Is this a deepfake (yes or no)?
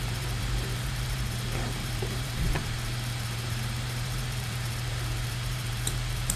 yes